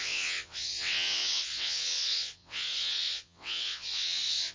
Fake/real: fake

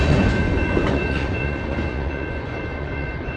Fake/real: fake